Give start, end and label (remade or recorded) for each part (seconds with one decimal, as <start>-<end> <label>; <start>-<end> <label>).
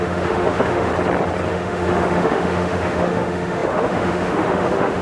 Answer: 0.0-0.9 remade; 0.9-1.5 recorded; 1.5-5.0 remade